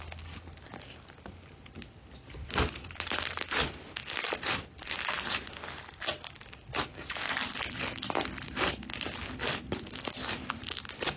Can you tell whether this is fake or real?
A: real